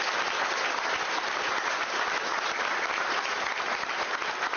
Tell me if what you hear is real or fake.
real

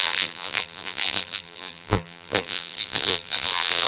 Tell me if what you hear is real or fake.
fake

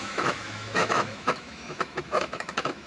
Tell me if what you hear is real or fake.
fake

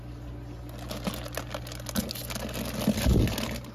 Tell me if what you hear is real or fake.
real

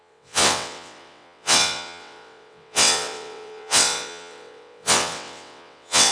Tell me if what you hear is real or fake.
fake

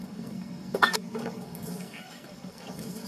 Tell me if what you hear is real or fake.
fake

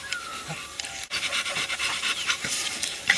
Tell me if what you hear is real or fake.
fake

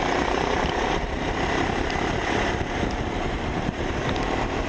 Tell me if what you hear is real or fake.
fake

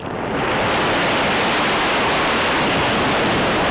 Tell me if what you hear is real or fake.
real